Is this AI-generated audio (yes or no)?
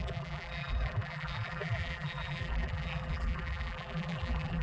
yes